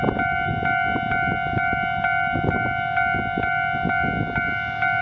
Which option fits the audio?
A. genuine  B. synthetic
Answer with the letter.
A